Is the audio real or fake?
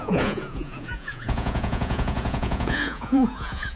fake